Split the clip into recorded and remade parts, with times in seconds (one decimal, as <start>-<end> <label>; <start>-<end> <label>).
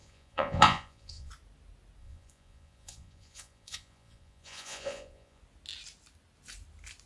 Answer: 0.0-1.3 remade; 1.3-2.0 recorded; 2.0-5.4 remade; 5.4-7.1 recorded